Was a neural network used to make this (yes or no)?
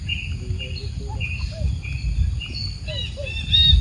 no